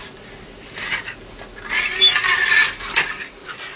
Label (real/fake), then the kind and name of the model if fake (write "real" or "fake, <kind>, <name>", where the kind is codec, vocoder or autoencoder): real